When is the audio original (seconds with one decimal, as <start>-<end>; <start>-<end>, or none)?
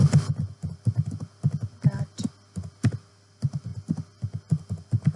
0.0-5.2